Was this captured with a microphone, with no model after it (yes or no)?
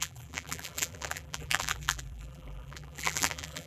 no